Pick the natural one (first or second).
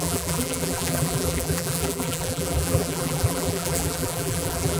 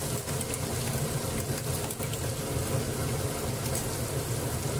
second